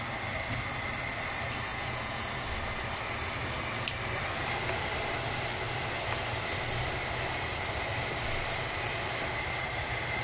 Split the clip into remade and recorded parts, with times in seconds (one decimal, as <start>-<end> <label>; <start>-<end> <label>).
0.0-1.7 recorded; 1.7-2.3 remade; 2.3-10.2 recorded